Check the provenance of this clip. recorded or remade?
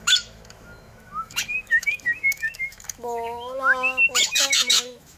remade